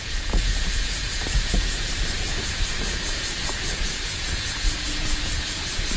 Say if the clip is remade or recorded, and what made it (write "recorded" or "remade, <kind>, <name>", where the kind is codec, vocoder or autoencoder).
remade, vocoder, Vocos